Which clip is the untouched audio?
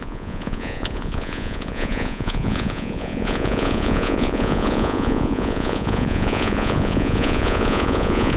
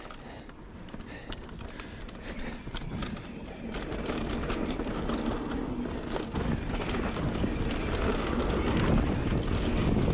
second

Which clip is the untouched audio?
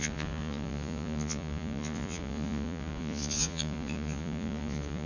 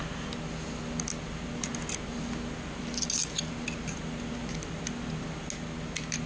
second